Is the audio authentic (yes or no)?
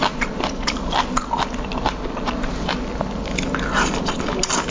yes